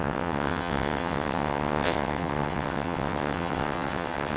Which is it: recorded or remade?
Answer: remade